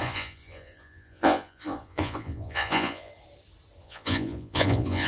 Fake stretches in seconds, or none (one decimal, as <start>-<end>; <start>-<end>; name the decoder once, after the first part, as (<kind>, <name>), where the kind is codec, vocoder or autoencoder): 0.0-3.1 (vocoder, Vocos); 3.8-5.1